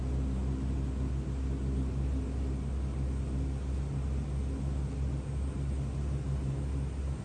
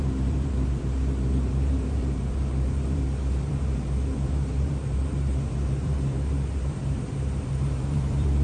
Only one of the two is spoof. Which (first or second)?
second